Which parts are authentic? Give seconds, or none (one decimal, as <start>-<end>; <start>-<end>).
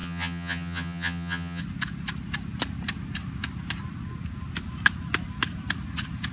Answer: 1.6-6.3